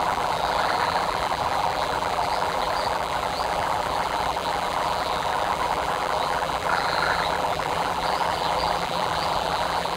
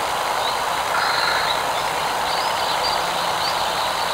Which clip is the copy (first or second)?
first